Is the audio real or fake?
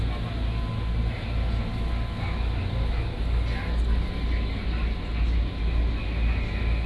real